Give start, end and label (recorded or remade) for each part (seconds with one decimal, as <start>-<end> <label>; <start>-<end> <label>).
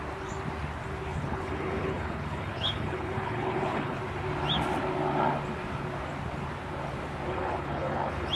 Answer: 0.0-1.1 recorded; 1.1-4.0 remade; 4.0-7.3 recorded; 7.3-8.3 remade